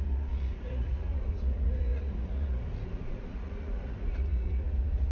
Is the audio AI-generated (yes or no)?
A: yes